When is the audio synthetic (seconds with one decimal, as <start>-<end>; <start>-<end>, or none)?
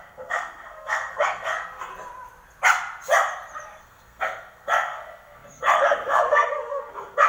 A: 0.0-1.9; 3.8-7.3